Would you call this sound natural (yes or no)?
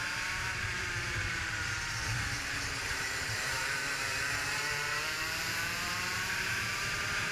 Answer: no